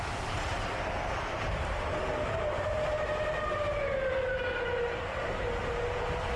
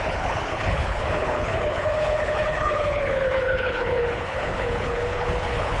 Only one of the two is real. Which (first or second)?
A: first